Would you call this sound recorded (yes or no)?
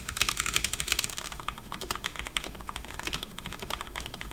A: no